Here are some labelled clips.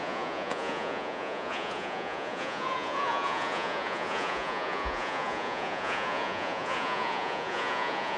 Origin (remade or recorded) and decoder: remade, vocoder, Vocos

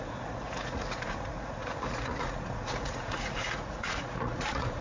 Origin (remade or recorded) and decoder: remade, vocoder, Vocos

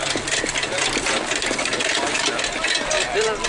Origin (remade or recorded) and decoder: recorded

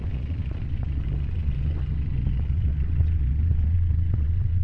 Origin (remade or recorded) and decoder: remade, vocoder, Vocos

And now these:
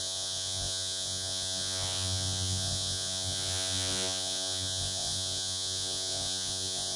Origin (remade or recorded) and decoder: remade, vocoder, Vocos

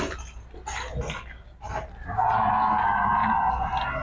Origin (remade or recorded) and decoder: recorded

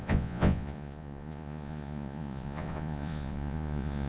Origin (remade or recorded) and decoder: remade, vocoder, Vocos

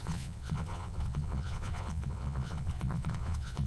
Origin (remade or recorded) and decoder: remade, vocoder, Vocos